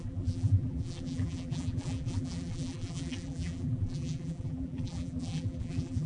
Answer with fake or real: fake